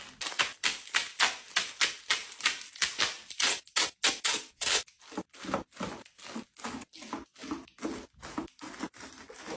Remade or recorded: recorded